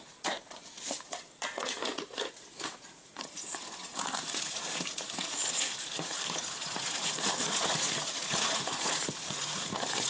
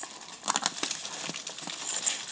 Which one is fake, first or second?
first